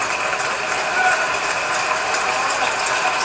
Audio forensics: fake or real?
real